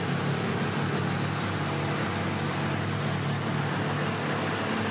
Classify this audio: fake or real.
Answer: real